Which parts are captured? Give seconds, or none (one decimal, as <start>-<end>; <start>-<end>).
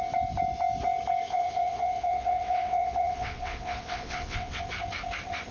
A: 0.0-1.3; 4.6-5.5